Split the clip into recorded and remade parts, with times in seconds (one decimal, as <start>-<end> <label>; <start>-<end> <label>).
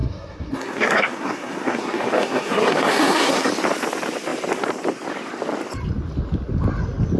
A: 0.0-3.5 remade; 3.5-7.2 recorded